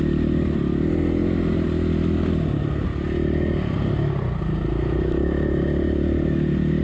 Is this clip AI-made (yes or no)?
no